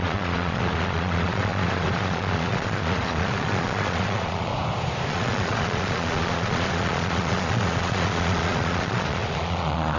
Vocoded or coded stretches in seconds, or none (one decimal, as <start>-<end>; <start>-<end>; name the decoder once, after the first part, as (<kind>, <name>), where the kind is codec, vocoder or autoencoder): 0.0-4.5 (vocoder, Vocos); 5.1-10.0